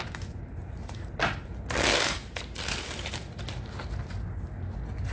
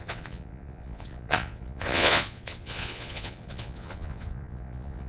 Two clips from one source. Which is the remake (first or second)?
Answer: second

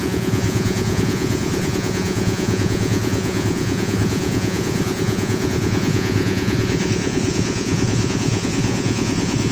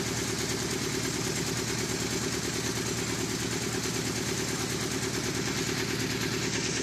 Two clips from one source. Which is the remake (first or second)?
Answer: first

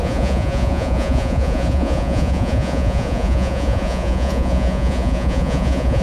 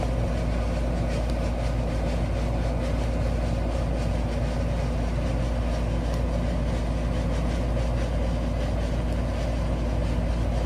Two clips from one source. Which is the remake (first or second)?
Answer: first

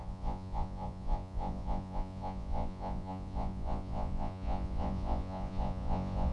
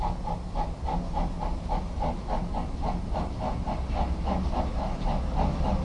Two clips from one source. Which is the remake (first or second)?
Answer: first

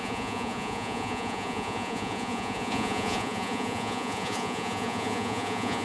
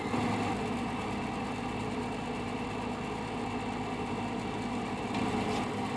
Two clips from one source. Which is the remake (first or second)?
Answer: first